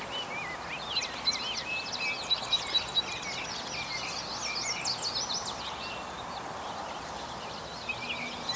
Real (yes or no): yes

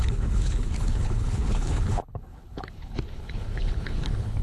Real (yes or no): no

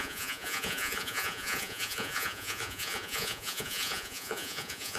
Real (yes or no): no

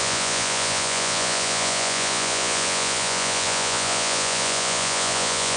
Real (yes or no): no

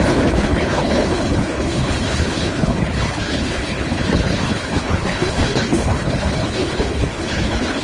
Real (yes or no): no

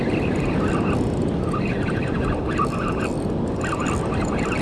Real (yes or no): yes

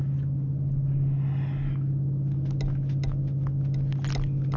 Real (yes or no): yes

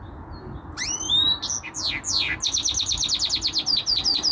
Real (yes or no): yes